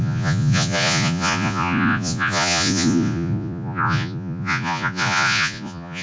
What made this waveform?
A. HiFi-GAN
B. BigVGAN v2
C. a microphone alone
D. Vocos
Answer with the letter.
D